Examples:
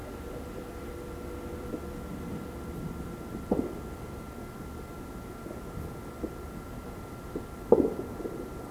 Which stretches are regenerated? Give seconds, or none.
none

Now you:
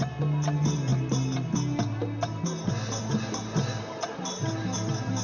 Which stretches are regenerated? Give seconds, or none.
none